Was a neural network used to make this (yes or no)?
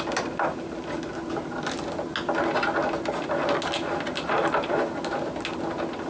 no